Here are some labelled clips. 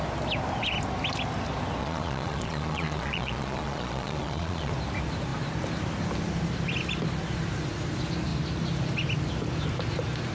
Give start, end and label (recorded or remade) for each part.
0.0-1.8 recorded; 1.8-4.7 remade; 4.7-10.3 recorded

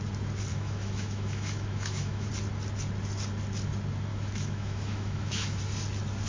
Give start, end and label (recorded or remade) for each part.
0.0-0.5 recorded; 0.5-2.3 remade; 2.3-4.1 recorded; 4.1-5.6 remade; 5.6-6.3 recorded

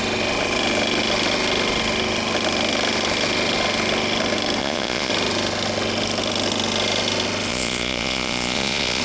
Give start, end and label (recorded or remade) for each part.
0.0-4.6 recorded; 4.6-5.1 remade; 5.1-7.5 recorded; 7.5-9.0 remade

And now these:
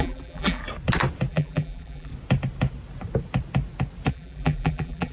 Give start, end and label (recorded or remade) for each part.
0.0-0.6 remade; 0.6-1.3 recorded; 1.3-2.1 remade; 2.1-4.1 recorded; 4.1-5.1 remade